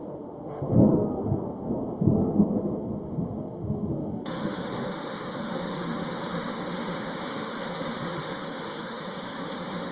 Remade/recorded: remade